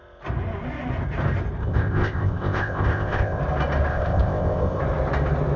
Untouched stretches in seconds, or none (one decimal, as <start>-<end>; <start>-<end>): 0.0-1.6; 3.4-3.9; 4.8-5.6